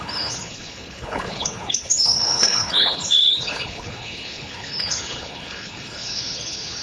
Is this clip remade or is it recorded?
remade